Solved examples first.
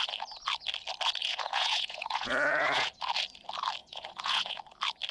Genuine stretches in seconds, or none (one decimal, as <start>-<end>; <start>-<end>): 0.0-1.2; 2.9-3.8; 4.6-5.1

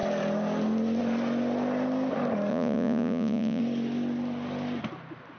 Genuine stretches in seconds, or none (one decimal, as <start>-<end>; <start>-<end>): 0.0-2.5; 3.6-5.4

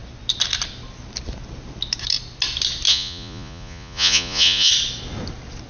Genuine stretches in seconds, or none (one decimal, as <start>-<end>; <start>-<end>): 0.0-2.9; 4.7-5.7

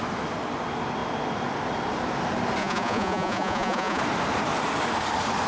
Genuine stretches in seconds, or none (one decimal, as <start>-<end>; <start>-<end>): 0.0-2.6; 4.0-5.5